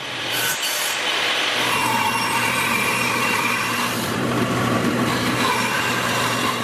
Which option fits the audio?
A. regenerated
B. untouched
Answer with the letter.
A